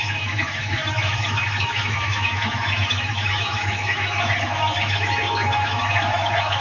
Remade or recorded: remade